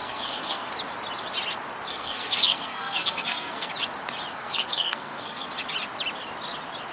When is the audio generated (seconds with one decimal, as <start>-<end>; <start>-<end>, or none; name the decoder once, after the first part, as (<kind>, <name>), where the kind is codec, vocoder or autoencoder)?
0.0-0.7 (codec, SNAC); 1.9-3.7; 4.3-5.5